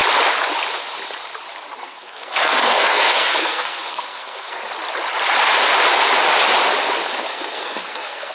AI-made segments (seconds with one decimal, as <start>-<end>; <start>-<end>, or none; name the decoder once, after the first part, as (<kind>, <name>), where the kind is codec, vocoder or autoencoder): 1.8-4.6 (codec, SNAC); 7.2-8.3